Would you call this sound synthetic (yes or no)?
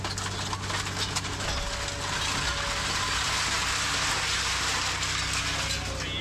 no